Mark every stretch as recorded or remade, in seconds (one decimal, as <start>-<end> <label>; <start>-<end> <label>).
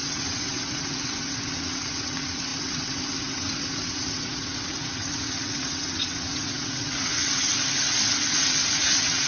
0.0-9.3 remade